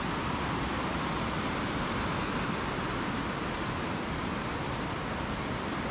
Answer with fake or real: real